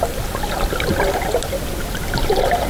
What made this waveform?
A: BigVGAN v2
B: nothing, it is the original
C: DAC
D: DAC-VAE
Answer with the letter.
B